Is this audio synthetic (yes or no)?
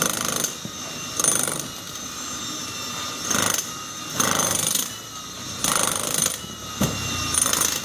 no